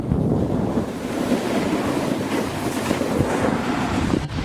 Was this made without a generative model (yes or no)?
no